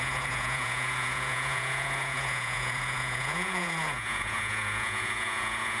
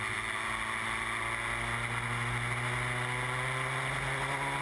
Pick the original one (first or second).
second